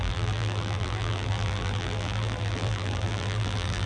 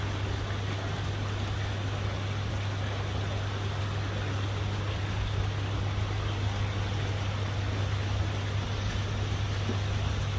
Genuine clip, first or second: second